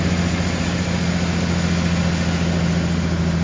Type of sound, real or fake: real